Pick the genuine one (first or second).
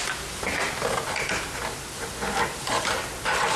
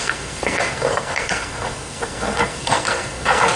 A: first